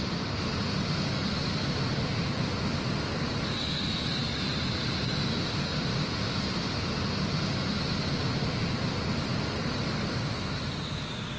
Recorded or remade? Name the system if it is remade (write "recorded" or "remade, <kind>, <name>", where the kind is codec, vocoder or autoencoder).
recorded